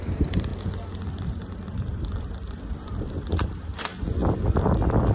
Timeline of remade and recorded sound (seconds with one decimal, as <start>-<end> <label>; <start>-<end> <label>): 0.0-0.5 remade; 0.5-2.3 recorded; 2.3-3.9 remade; 3.9-4.6 recorded; 4.6-5.1 remade